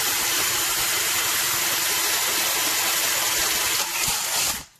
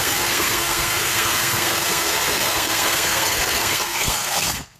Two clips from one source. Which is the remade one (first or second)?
second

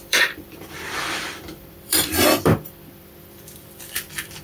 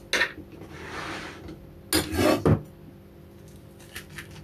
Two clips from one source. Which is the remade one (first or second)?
first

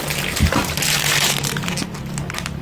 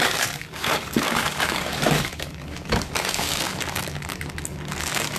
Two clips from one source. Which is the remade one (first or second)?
second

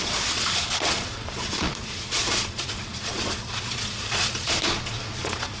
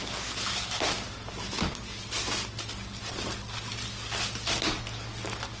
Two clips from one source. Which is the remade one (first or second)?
first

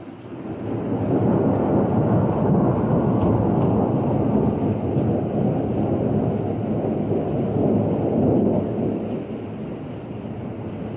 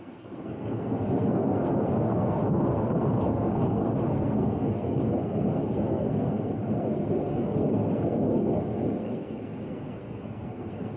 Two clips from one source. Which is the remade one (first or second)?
second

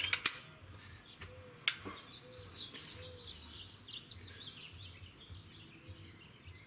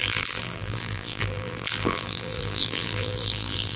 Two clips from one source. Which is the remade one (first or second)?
second